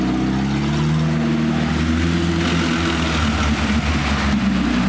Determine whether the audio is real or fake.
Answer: real